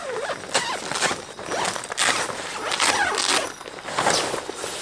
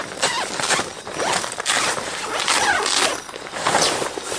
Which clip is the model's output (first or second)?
second